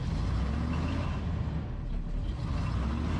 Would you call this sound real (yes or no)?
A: yes